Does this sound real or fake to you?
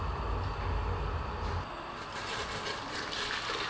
real